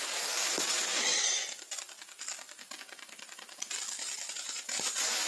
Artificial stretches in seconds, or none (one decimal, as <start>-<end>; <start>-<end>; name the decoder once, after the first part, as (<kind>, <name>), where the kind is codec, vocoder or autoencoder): 0.0-1.1 (vocoder, BigVGAN v2); 4.3-5.3